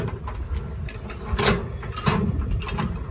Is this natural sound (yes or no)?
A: yes